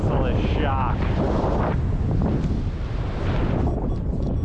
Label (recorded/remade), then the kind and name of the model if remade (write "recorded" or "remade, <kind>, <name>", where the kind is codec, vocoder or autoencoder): recorded